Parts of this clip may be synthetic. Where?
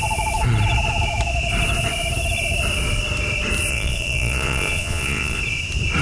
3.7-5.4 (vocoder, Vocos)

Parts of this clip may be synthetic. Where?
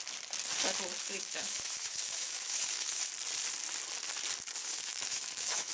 1.0-3.1 (autoencoder, DAC-VAE); 4.6-5.7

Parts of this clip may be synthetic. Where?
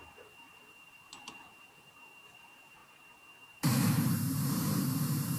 0.0-5.4 (vocoder, BigVGAN v2)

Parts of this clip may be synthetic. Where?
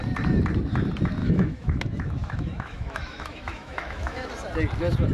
1.2-4.3 (autoencoder, DAC-VAE)